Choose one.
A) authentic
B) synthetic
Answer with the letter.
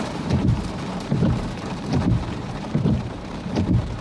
B